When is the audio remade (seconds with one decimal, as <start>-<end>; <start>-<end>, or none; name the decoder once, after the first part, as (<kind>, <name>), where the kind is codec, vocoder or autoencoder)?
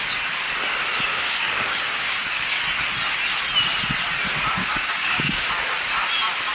1.1-2.6 (codec, DAC); 4.6-5.5